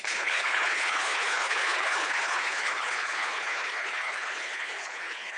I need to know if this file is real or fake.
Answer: fake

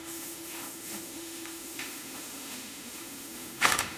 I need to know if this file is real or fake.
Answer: fake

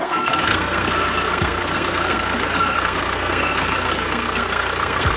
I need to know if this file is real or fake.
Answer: fake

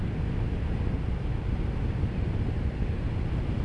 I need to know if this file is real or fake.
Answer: real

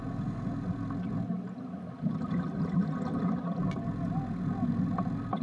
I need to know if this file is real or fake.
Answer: real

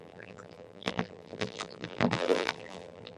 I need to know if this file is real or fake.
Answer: fake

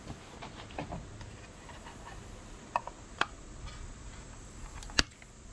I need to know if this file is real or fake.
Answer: real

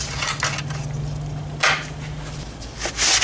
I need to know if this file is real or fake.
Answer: real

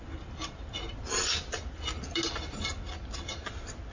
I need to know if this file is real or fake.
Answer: real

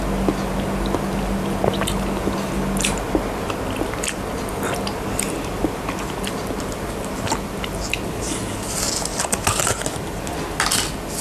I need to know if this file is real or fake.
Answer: real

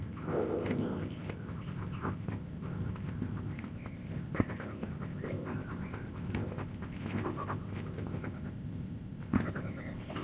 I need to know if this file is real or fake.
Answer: fake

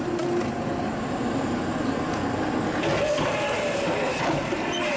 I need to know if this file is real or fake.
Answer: real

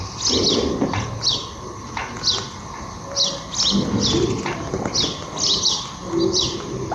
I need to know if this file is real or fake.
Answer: real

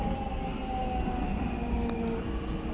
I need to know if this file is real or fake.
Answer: real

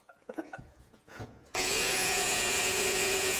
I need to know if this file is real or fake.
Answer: fake